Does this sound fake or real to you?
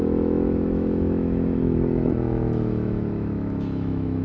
fake